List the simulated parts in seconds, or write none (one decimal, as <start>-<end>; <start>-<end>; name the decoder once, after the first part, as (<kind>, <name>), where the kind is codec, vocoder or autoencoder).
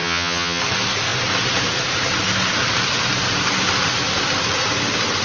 0.0-0.6 (vocoder, HiFi-GAN)